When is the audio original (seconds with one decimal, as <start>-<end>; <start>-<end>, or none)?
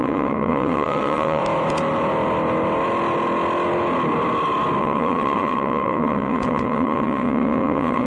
1.4-4.8